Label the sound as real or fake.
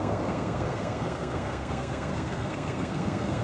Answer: fake